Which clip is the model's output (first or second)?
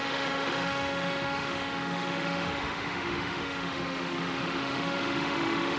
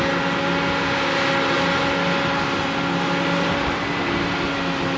first